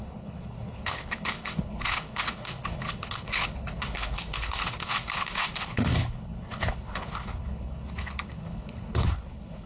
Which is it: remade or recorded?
remade